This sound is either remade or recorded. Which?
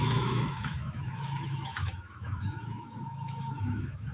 remade